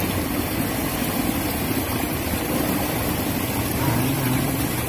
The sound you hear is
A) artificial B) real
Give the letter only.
B